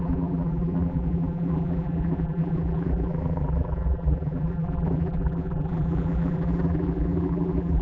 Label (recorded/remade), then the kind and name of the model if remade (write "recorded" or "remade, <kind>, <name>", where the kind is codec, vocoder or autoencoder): remade, vocoder, BigVGAN v2